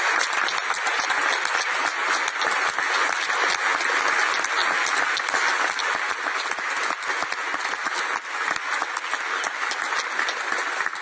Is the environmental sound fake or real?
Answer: real